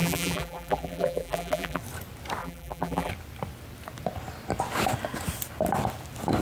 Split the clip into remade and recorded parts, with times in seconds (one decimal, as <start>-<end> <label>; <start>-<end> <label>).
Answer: 0.0-1.8 remade; 1.8-2.4 recorded; 2.4-3.1 remade; 3.1-6.4 recorded